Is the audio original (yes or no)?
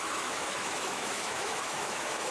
no